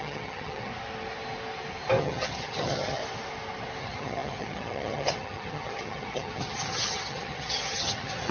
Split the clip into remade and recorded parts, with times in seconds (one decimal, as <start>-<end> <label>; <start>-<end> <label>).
0.0-0.7 remade; 0.7-2.0 recorded; 2.0-3.0 remade; 3.0-3.8 recorded; 3.8-8.3 remade